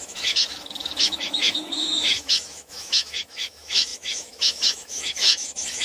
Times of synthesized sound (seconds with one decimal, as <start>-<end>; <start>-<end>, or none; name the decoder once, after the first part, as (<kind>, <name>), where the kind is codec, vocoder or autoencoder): 0.0-5.8 (autoencoder, DAC-VAE)